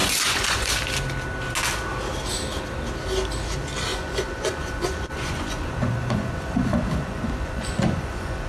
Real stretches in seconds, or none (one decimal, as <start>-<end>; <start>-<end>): 0.7-3.9